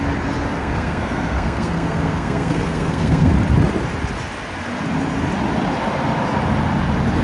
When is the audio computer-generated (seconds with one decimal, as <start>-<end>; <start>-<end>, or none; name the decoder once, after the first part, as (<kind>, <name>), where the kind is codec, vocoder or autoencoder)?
0.6-3.3 (codec, SNAC)